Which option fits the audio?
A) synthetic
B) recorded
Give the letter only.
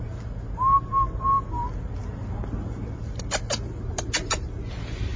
B